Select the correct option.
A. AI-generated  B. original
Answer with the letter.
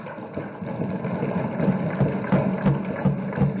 B